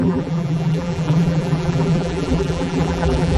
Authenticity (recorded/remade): remade